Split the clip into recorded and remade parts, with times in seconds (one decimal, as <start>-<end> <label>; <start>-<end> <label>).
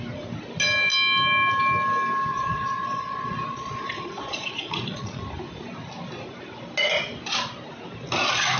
0.0-2.3 recorded; 2.3-5.2 remade; 5.2-8.6 recorded